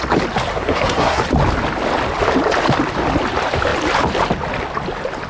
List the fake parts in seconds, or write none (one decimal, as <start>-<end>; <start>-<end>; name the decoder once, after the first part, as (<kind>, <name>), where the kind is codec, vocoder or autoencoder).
0.5-1.2 (codec, SNAC)